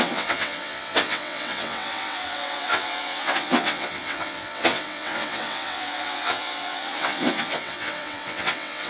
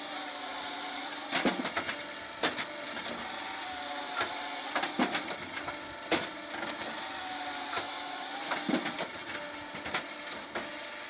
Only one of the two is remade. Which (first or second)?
first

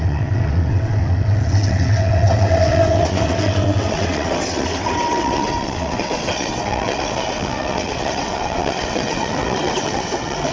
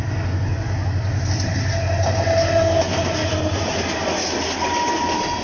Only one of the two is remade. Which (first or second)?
first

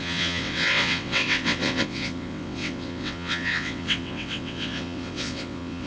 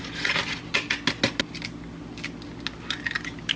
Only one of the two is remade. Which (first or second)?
first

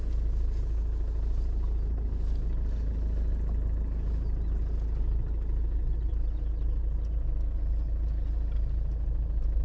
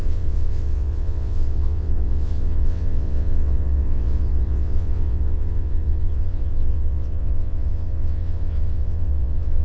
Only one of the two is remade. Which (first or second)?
second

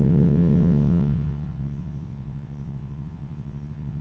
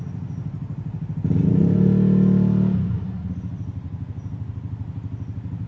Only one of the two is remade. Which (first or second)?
first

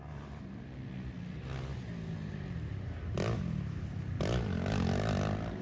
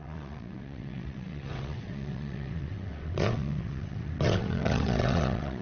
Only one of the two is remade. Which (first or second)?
second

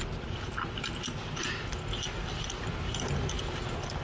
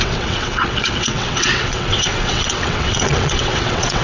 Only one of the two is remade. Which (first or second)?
second